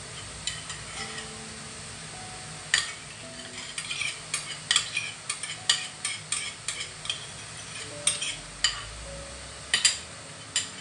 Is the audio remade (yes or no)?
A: no